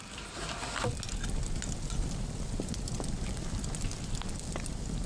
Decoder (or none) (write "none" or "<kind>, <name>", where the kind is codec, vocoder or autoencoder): none